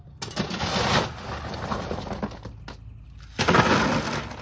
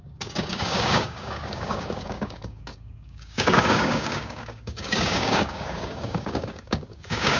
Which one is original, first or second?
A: first